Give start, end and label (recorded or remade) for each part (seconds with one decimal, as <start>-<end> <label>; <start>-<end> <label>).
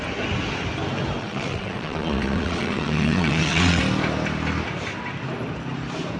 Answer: 0.0-1.2 recorded; 1.2-3.8 remade; 3.8-6.2 recorded